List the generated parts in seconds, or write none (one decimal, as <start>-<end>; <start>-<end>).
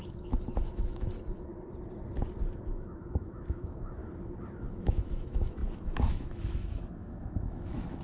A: 0.0-1.5; 2.6-4.0; 4.7-8.0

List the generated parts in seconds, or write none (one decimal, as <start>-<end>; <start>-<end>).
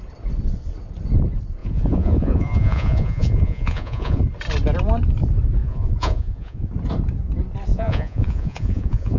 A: 1.6-4.2; 5.6-6.7; 7.7-9.2